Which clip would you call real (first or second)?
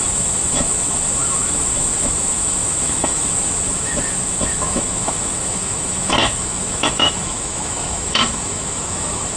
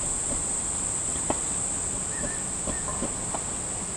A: second